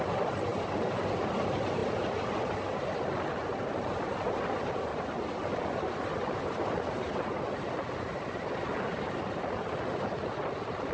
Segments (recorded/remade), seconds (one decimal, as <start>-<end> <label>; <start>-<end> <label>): 0.0-10.9 recorded